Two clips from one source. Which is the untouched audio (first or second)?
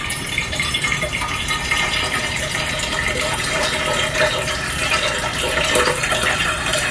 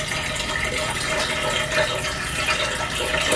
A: second